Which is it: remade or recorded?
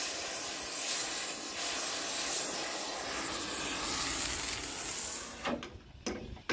recorded